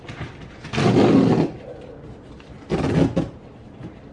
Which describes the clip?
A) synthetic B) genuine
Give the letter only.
B